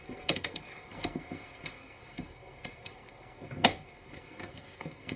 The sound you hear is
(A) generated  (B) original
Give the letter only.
A